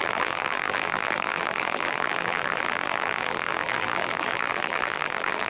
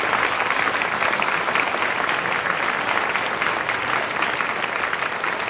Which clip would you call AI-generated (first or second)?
first